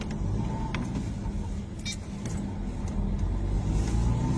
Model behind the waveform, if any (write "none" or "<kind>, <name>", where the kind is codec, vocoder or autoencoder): none